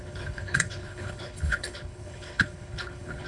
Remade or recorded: remade